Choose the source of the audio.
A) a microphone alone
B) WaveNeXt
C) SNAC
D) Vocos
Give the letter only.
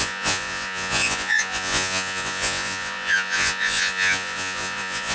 D